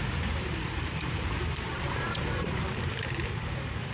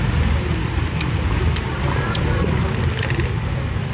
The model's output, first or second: first